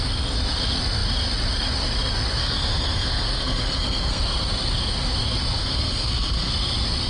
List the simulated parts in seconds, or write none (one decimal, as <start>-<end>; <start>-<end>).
2.4-4.2; 5.6-6.5